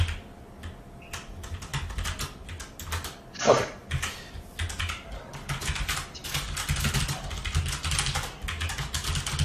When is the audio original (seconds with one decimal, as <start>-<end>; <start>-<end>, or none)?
0.0-9.4